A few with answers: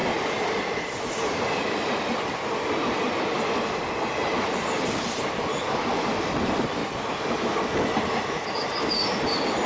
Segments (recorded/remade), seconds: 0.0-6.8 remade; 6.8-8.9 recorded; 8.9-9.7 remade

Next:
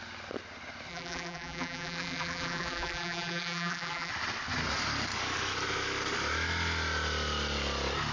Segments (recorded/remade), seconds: 0.0-0.9 recorded; 0.9-4.1 remade; 4.1-8.1 recorded

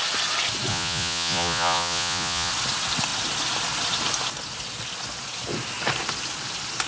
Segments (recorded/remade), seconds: 0.0-0.7 recorded; 0.7-2.5 remade; 2.5-6.9 recorded

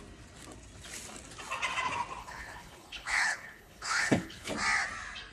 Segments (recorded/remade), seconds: 0.0-2.2 recorded; 2.2-4.5 remade; 4.5-5.3 recorded

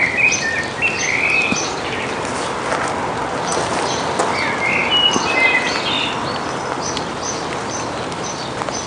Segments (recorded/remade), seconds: 0.0-8.9 recorded